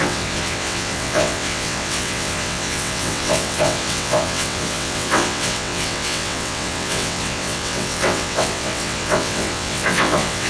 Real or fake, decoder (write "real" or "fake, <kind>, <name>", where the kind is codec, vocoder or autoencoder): fake, vocoder, WaveNeXt